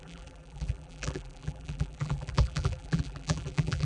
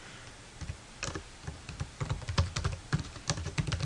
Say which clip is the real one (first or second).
second